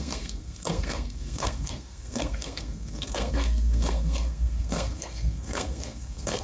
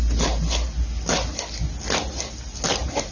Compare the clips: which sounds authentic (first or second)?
second